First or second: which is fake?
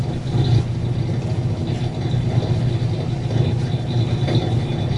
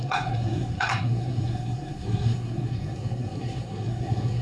second